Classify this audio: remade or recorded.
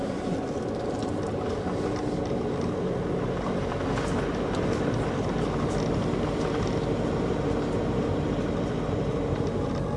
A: recorded